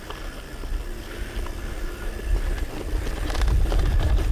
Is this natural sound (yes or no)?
yes